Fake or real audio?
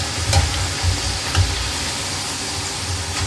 real